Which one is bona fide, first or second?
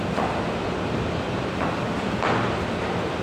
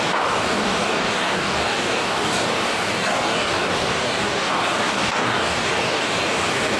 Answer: first